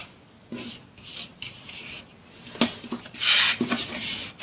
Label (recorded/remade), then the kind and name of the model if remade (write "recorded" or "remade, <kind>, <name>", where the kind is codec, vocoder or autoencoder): recorded